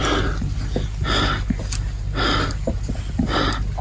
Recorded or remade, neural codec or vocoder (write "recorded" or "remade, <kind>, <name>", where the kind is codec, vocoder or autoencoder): recorded